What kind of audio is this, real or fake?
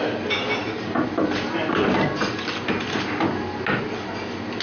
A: real